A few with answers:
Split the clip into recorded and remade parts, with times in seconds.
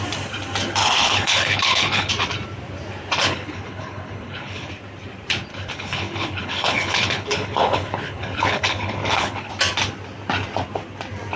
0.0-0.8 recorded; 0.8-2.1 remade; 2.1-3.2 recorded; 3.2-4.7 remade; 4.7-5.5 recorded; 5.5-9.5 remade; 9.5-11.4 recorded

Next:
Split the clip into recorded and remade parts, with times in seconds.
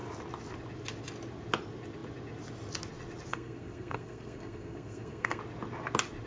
0.0-3.3 recorded; 3.3-5.4 remade; 5.4-6.3 recorded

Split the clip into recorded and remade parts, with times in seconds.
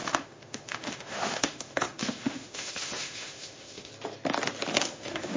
0.0-3.9 remade; 3.9-4.7 recorded; 4.7-5.4 remade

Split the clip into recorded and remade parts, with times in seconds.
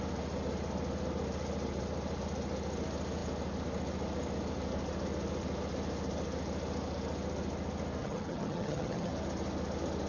0.0-8.0 recorded; 8.0-9.1 remade; 9.1-10.1 recorded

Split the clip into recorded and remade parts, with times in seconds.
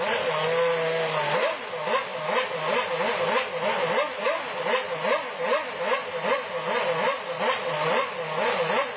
0.0-9.0 recorded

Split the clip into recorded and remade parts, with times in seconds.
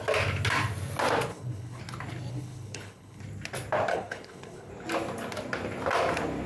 0.0-1.3 recorded; 1.3-1.8 remade; 1.8-2.3 recorded; 2.3-3.2 remade; 3.2-3.9 recorded; 3.9-4.7 remade; 4.7-6.5 recorded